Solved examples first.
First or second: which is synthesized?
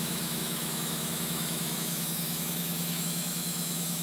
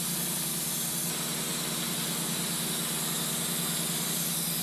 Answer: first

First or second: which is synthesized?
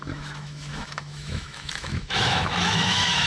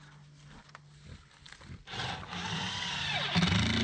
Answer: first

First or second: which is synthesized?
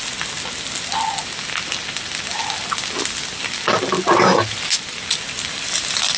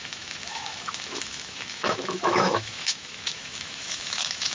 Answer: second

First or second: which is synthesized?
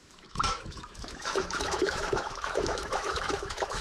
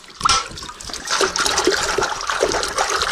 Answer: first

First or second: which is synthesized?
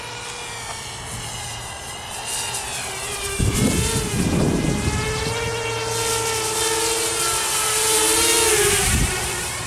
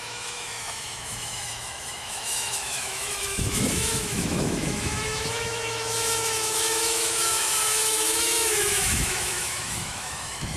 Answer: second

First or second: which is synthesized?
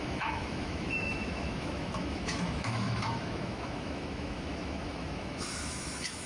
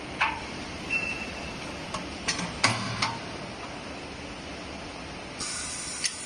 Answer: first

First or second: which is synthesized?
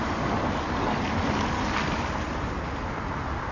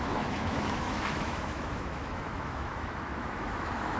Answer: second